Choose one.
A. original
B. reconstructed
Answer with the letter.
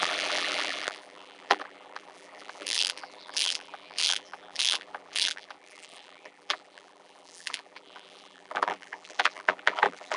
B